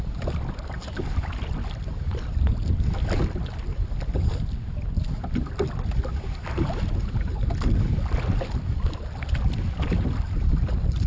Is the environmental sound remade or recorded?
recorded